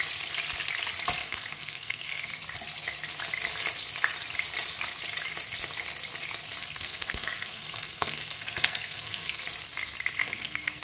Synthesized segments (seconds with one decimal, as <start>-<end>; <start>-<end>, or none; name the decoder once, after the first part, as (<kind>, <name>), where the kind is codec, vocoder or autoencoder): 1.2-2.3 (codec, SNAC); 6.6-9.4; 10.2-10.8